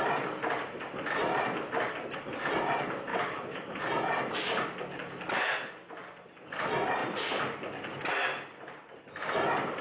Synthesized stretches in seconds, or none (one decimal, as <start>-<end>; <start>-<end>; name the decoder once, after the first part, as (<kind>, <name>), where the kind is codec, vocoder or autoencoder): 3.1-3.8 (autoencoder, DAC-VAE)